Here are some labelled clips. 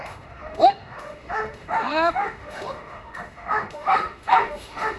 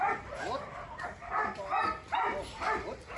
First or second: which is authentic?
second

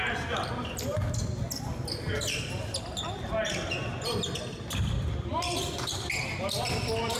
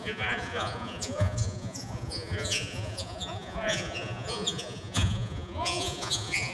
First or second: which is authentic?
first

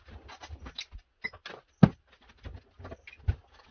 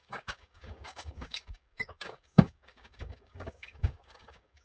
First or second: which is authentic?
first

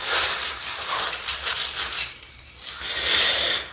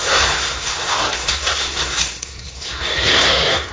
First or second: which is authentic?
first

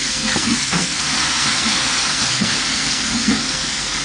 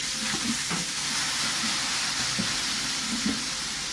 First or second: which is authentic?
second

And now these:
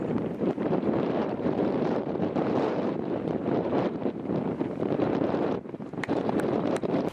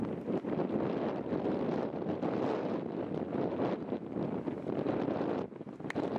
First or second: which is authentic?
second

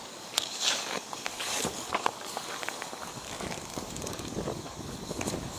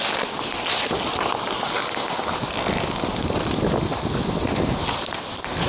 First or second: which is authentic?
second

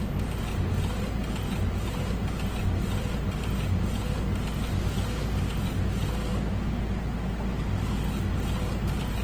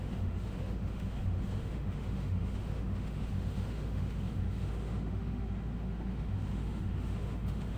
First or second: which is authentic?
first